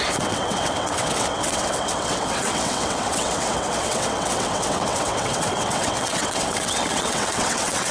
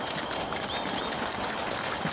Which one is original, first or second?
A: second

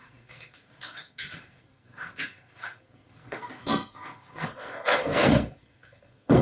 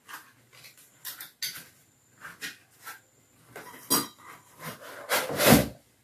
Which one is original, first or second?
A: second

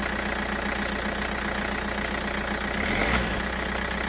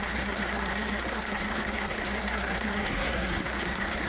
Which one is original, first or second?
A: first